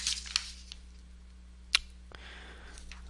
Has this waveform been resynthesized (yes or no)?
no